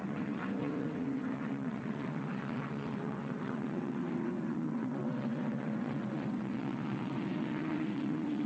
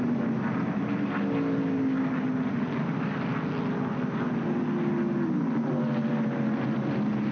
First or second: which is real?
second